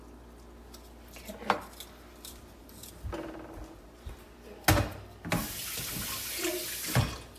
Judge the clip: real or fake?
real